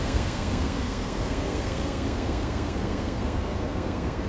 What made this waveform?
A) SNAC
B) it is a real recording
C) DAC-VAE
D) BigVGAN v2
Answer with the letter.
A